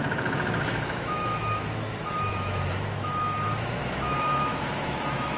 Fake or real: fake